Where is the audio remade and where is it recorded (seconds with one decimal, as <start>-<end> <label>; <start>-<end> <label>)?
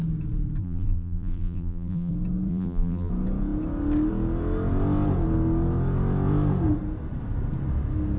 0.0-0.6 recorded; 0.6-2.1 remade; 2.1-2.5 recorded; 2.5-3.1 remade; 3.1-8.2 recorded